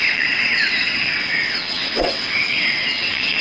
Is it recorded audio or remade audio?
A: remade